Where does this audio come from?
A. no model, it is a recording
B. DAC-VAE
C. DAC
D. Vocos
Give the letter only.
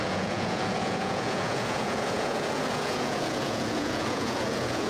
D